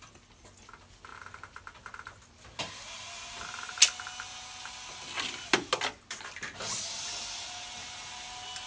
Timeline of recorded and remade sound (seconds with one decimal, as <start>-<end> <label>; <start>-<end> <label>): 0.0-8.7 recorded